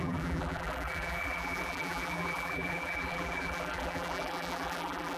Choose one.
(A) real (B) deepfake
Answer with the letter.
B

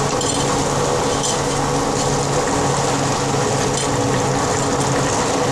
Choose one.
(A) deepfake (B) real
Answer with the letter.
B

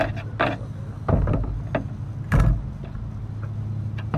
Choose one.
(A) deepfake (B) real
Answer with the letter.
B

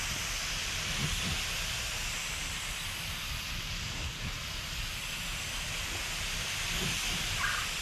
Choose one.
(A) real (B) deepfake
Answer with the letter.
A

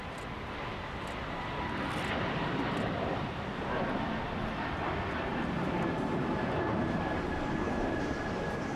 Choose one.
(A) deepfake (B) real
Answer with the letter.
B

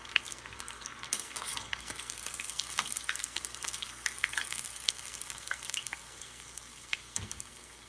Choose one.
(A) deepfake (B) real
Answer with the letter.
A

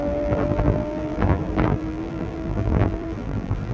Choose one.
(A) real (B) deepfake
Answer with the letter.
B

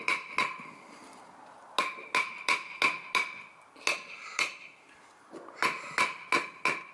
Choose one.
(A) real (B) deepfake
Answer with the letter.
A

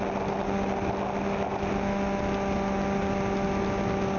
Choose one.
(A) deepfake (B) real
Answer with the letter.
B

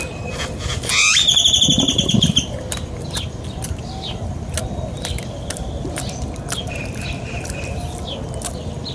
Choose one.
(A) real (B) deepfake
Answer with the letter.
A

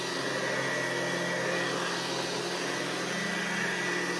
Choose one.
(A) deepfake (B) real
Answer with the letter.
B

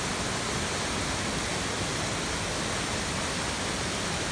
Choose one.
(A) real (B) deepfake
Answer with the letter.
A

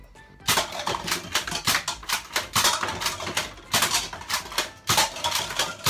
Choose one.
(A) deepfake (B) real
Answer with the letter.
B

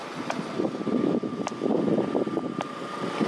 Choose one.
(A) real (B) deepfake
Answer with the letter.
A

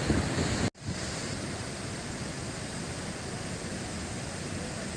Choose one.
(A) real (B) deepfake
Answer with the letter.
A